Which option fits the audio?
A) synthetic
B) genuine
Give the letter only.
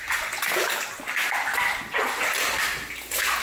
B